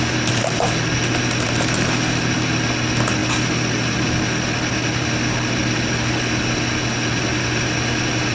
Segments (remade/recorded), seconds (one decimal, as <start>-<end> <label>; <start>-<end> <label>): 0.0-8.3 recorded